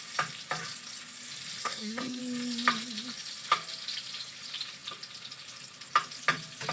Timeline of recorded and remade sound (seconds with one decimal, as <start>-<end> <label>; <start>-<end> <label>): 0.0-1.6 recorded; 1.6-2.2 remade; 2.2-6.7 recorded